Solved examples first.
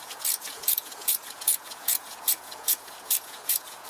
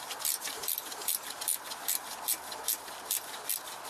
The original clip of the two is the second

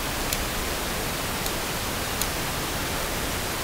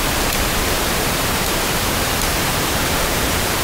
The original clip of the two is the first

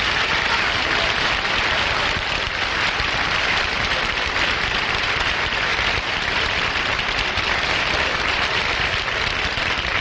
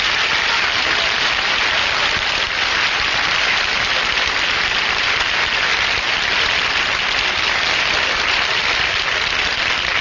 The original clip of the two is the second